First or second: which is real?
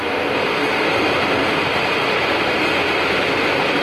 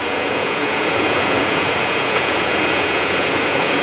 first